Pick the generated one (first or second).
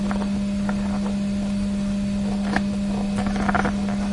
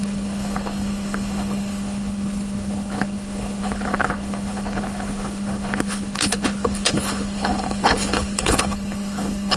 second